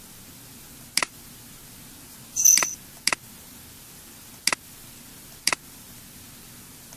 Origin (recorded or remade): recorded